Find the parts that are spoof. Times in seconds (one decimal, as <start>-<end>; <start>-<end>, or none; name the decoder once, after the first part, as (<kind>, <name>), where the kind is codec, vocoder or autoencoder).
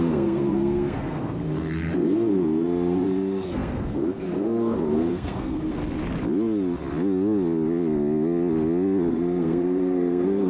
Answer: 0.0-5.8 (codec, SNAC); 9.1-10.5